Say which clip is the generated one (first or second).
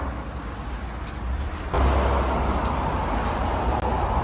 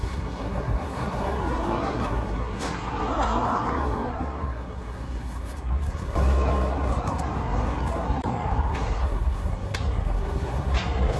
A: second